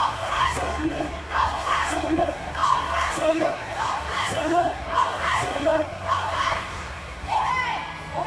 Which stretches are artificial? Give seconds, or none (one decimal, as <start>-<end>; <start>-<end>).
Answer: 0.0-7.5

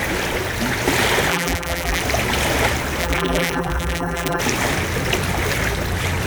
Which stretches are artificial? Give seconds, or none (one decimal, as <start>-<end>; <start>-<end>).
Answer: 1.3-2.0; 3.0-4.4

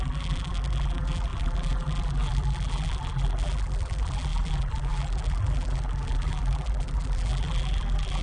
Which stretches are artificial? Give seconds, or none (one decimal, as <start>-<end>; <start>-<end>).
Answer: 0.0-8.2

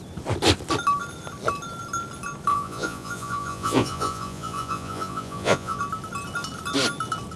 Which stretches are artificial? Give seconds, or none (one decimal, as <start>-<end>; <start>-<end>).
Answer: 2.5-5.8